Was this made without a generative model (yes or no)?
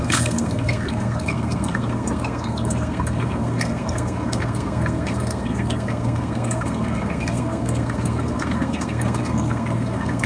no